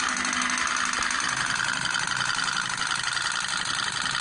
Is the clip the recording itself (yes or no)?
yes